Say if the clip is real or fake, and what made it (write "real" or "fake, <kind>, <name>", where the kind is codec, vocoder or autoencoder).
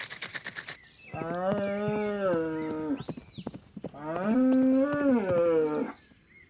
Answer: real